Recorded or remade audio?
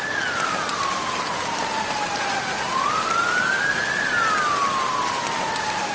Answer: recorded